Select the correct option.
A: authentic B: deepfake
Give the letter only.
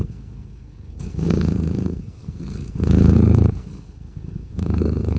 B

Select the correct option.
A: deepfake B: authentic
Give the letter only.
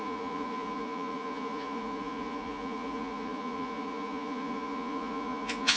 A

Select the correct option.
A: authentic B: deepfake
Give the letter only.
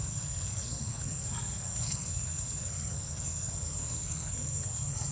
B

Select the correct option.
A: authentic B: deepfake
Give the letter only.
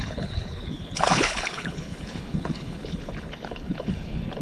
B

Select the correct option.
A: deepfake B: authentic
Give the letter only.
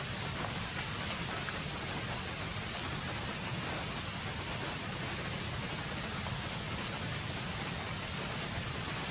B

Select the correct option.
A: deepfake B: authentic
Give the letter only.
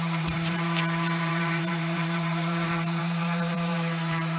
A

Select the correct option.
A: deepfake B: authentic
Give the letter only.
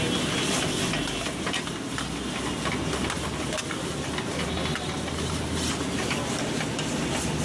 B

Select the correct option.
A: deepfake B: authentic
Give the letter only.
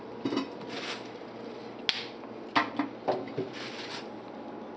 B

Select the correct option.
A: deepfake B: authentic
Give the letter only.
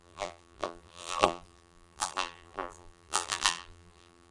A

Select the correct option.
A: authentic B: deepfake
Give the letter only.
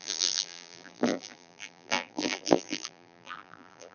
B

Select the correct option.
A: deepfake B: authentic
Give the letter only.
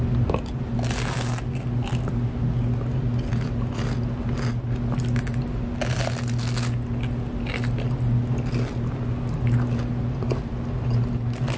B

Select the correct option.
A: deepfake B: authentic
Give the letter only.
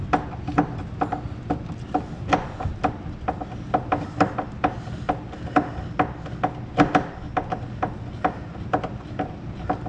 B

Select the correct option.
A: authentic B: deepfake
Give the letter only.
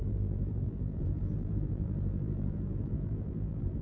B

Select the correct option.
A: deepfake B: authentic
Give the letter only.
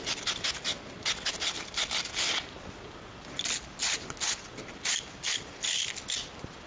B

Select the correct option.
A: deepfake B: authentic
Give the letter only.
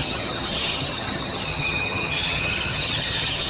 A